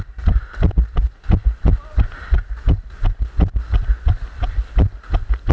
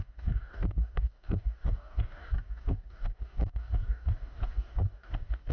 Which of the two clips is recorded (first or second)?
first